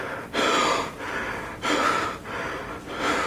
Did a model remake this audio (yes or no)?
no